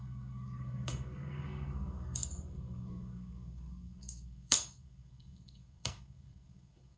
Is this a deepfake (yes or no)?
yes